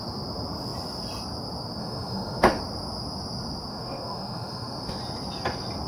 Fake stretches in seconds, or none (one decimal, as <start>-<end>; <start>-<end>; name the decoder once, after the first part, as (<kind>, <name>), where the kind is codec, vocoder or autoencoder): 1.8-2.6 (autoencoder, DAC-VAE); 3.7-5.0